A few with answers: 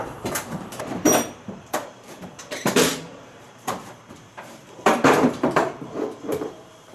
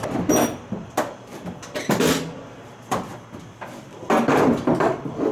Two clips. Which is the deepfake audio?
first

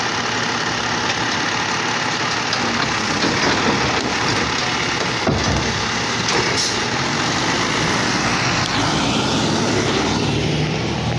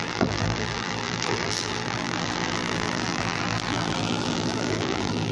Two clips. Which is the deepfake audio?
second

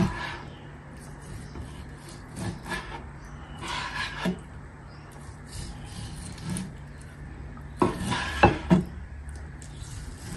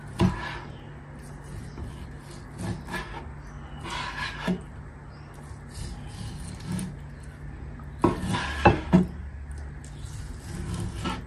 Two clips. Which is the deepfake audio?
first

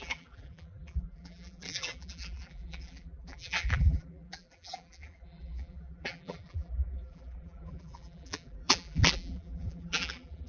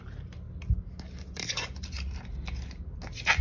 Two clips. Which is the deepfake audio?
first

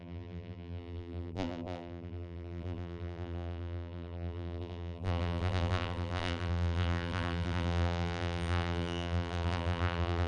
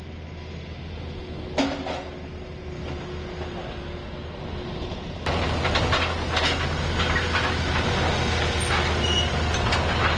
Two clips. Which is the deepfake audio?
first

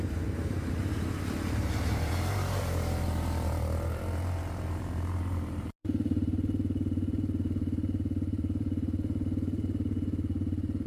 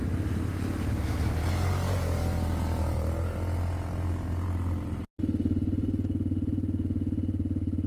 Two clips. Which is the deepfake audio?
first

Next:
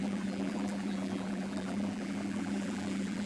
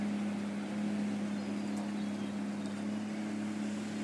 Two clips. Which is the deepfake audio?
first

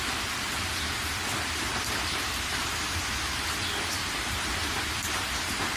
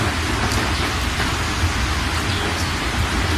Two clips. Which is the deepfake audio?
first